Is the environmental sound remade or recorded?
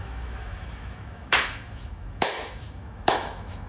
remade